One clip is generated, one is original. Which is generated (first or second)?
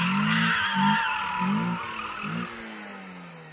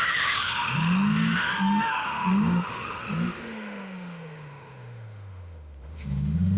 second